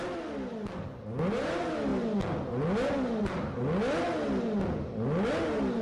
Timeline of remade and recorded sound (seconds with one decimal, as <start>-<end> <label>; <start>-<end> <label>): 0.0-5.8 recorded